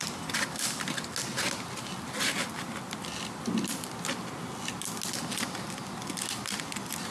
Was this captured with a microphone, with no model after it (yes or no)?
yes